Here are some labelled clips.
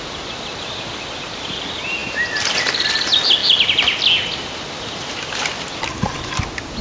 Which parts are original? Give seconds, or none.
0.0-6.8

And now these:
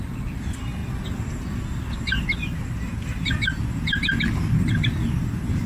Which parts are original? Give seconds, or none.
0.0-5.7

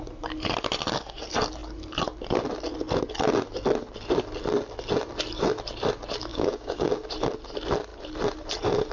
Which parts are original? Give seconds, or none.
0.0-6.3; 6.9-8.9

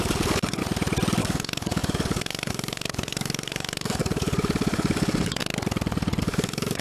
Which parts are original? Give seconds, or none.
0.6-1.2; 5.4-6.2

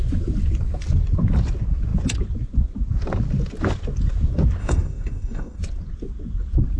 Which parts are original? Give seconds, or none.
0.0-4.6; 5.6-6.8

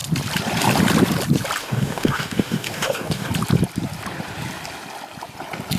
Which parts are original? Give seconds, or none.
0.0-1.6; 3.3-5.8

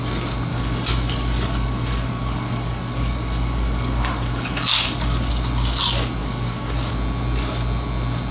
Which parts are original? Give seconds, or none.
0.0-0.5; 5.3-6.2; 6.9-8.3

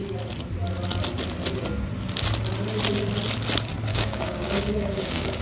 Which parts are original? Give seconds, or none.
0.0-3.9